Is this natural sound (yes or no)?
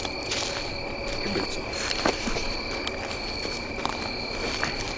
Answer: yes